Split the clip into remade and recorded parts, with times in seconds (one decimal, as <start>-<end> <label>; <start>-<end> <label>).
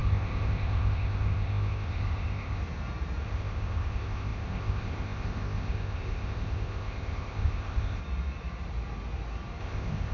0.0-2.6 remade; 2.6-3.2 recorded; 3.2-8.0 remade; 8.0-9.6 recorded; 9.6-10.1 remade